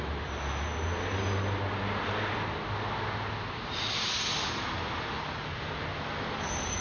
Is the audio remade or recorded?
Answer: recorded